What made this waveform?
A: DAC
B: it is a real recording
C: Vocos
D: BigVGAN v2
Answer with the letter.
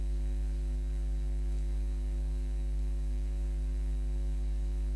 A